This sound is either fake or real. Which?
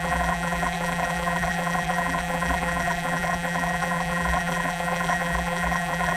fake